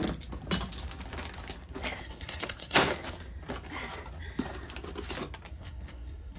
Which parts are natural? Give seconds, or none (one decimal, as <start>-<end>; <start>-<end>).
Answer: 0.0-2.0; 2.9-5.5